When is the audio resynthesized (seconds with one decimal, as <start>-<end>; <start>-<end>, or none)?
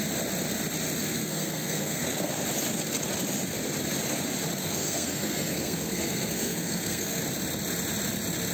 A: 1.0-2.3; 4.6-7.2